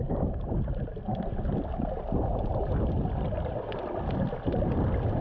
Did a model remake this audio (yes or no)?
no